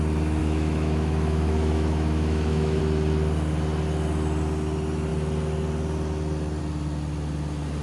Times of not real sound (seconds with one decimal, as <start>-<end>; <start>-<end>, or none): 0.4-2.8